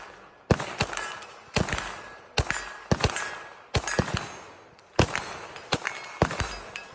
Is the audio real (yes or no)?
yes